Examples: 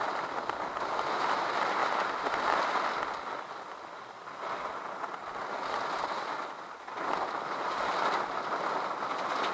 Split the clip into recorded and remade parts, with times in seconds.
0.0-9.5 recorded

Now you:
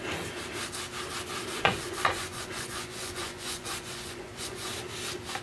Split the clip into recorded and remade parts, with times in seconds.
0.0-1.5 recorded; 1.5-4.7 remade; 4.7-5.4 recorded

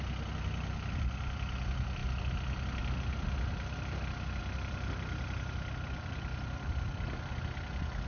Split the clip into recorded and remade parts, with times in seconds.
0.0-8.1 recorded